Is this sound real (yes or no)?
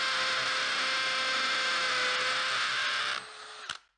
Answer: yes